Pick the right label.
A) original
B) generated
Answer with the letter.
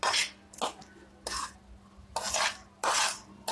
A